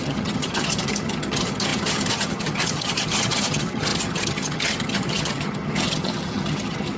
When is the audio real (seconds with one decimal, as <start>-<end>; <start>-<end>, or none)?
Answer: none